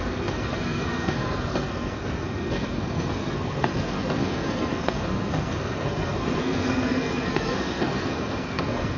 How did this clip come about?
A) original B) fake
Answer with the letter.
B